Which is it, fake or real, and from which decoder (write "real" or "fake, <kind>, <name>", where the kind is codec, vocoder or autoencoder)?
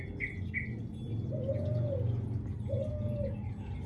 real